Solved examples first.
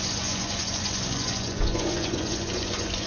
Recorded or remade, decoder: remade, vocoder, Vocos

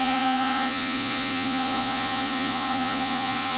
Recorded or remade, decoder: remade, vocoder, Vocos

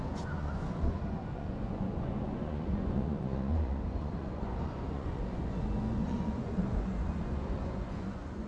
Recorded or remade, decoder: remade, vocoder, Vocos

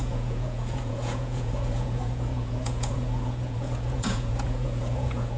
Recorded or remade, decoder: remade, vocoder, Vocos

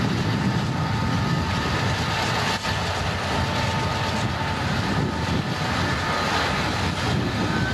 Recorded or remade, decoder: recorded